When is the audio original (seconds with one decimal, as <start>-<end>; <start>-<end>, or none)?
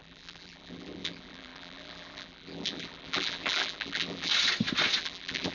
4.3-5.0